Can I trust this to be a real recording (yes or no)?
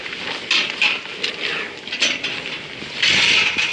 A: yes